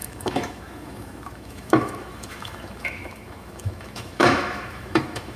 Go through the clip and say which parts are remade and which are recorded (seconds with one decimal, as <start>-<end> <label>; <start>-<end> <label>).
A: 0.0-5.4 remade